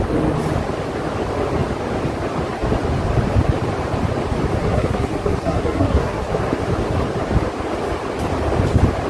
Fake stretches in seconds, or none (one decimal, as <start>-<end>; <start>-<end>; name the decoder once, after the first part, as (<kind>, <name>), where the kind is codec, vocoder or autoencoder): 4.6-6.5 (codec, SNAC)